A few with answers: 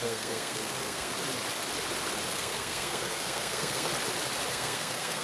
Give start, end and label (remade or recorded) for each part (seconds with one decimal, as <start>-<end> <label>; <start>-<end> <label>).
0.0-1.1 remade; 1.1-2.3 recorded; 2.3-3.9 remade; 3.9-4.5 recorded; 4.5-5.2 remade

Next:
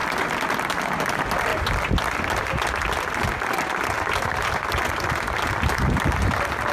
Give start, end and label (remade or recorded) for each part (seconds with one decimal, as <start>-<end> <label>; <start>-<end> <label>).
0.0-6.7 recorded

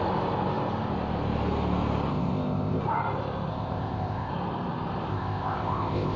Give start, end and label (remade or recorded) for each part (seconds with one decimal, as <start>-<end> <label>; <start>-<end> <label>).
0.0-2.1 recorded; 2.1-2.8 remade; 2.8-3.5 recorded; 3.5-4.3 remade; 4.3-5.1 recorded; 5.1-6.2 remade